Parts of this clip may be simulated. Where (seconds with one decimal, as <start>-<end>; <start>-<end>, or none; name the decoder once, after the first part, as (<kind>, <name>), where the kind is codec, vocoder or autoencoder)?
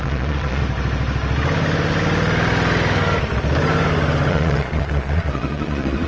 0.0-0.6 (vocoder, Vocos); 4.3-6.1